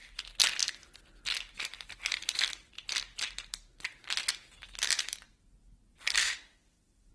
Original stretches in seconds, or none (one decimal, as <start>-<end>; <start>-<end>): 0.0-6.2